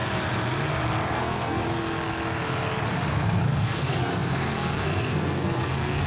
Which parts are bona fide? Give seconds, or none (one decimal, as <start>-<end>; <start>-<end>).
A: 0.0-1.1; 1.6-3.1